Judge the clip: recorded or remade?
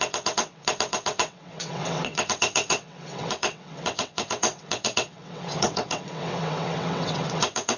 remade